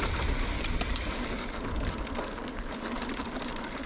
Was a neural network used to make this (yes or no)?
no